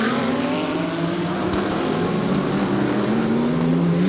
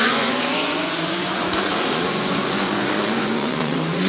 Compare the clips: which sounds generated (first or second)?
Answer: second